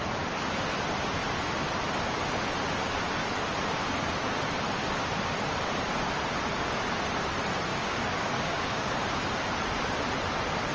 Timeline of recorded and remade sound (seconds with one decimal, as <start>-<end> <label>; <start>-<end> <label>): 0.0-7.7 recorded; 7.7-9.2 remade; 9.2-10.7 recorded